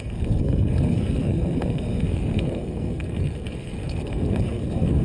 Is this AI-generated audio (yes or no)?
yes